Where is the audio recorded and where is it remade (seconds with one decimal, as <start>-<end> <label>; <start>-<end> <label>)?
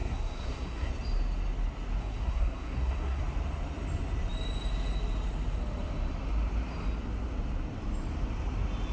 0.0-0.9 remade; 0.9-2.0 recorded; 2.0-3.2 remade; 3.2-8.9 recorded